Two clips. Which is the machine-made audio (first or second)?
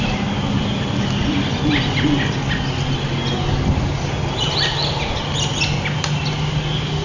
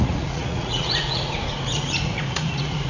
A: second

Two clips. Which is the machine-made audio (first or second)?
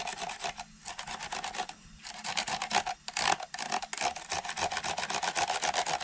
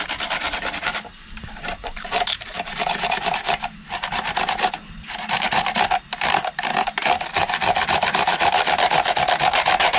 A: second